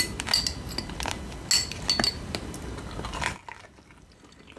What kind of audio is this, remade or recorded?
recorded